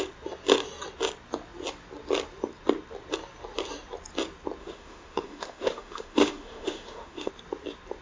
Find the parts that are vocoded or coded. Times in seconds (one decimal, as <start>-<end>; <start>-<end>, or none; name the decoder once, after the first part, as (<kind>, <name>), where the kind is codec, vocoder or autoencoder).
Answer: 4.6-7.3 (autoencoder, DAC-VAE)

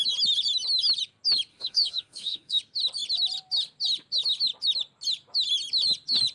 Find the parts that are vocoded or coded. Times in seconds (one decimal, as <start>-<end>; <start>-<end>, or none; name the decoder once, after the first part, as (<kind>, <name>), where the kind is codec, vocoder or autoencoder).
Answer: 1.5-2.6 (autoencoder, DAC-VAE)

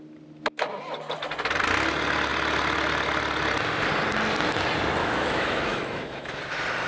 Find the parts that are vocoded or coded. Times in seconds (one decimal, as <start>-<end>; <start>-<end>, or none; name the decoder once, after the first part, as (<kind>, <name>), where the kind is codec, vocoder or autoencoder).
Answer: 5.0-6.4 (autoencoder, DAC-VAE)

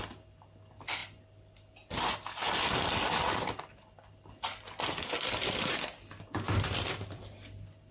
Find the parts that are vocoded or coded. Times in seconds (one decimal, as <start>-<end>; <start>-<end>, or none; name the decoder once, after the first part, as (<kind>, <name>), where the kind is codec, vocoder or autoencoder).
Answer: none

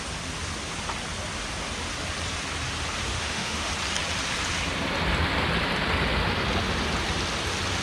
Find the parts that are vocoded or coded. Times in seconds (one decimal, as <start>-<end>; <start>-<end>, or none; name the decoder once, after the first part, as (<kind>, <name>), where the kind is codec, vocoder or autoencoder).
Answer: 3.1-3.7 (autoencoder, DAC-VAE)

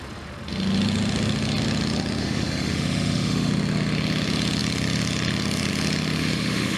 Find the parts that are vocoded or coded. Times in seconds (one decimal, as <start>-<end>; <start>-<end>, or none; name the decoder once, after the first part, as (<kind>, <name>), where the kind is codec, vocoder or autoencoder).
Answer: 2.2-3.5 (autoencoder, DAC-VAE); 6.2-6.8

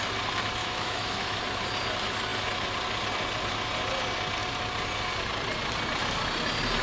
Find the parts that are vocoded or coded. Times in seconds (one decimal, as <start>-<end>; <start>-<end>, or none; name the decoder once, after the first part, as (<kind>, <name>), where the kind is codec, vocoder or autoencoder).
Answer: 0.6-1.4 (autoencoder, DAC-VAE)